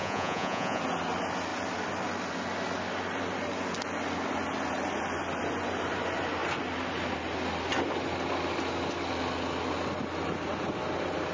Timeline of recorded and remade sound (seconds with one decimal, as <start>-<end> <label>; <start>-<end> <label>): 0.0-0.8 remade; 0.8-11.3 recorded